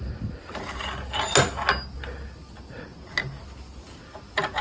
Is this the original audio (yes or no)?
yes